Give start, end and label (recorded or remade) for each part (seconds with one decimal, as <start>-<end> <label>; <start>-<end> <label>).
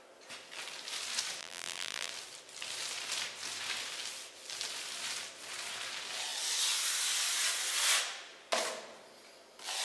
0.0-1.4 recorded; 1.4-2.1 remade; 2.1-9.8 recorded